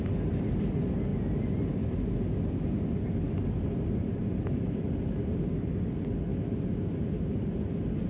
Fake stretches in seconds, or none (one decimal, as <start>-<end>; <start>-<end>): none